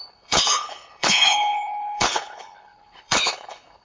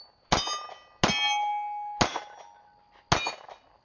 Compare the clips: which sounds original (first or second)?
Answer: second